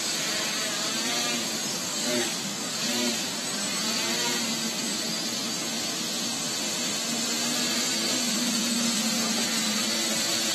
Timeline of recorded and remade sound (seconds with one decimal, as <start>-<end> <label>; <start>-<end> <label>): 0.0-1.7 recorded; 1.7-2.9 remade; 2.9-10.5 recorded